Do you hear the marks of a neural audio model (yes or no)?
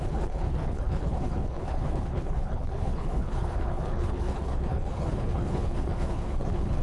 yes